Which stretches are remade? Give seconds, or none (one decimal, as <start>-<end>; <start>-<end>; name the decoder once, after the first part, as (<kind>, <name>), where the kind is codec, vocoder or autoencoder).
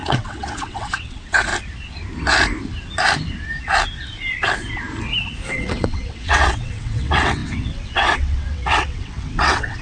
0.0-1.5 (vocoder, WaveNeXt); 5.5-9.8